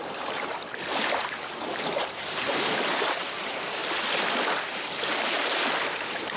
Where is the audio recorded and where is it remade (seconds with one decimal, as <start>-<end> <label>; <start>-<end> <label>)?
0.0-3.8 remade; 3.8-5.3 recorded; 5.3-6.4 remade